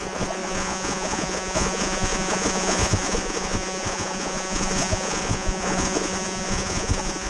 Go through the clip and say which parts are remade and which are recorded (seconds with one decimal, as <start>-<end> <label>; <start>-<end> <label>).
0.0-7.3 remade